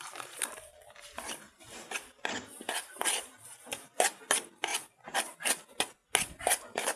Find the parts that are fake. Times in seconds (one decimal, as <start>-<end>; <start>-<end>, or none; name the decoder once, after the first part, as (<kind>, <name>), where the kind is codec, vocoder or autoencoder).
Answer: 4.7-5.5 (vocoder, BigVGAN v2)